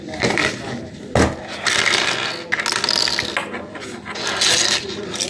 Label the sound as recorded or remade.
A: recorded